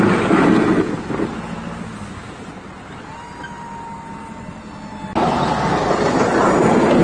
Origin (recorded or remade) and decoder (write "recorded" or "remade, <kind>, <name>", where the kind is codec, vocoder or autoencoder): recorded